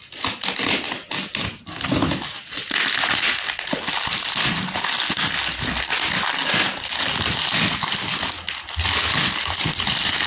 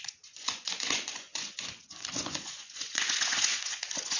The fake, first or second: second